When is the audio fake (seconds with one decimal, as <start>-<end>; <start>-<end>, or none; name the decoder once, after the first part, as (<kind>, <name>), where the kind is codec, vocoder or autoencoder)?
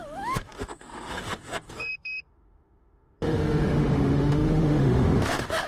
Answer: 0.0-5.7 (autoencoder, DAC-VAE)